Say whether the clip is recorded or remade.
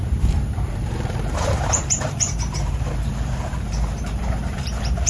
remade